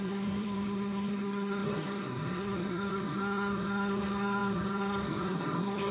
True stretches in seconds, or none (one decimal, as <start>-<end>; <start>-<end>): none